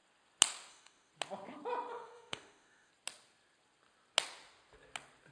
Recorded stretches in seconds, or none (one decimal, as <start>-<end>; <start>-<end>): 0.0-0.7; 1.1-1.9; 2.9-5.3